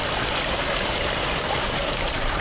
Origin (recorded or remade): recorded